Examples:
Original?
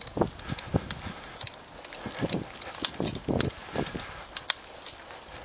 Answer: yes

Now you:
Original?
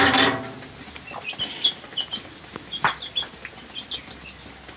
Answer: yes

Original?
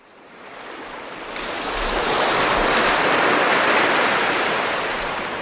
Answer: yes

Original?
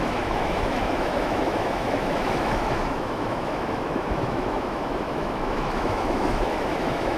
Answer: no